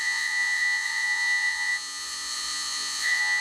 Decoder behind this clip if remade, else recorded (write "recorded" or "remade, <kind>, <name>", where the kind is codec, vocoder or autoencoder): remade, vocoder, Vocos